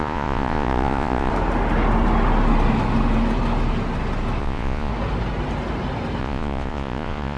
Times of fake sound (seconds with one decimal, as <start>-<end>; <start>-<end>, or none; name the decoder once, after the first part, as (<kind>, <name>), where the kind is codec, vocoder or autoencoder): 0.0-1.3 (vocoder, Vocos); 4.4-4.9; 6.2-7.4